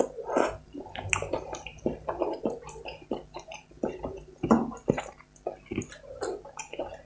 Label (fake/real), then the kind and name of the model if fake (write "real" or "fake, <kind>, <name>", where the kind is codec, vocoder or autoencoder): real